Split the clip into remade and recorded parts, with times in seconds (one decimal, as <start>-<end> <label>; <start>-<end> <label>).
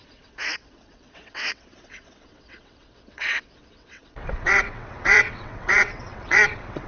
0.0-6.9 remade